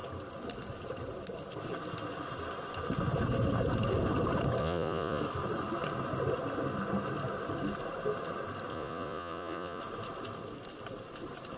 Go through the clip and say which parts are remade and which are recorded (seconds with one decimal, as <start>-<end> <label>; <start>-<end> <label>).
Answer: 0.0-4.6 recorded; 4.6-5.2 remade; 5.2-8.7 recorded; 8.7-9.8 remade; 9.8-11.6 recorded